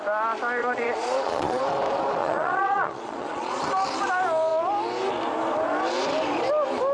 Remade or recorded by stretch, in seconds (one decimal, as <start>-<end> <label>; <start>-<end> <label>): 0.0-0.6 recorded; 0.6-1.6 remade; 1.6-2.2 recorded; 2.2-3.6 remade; 3.6-6.9 recorded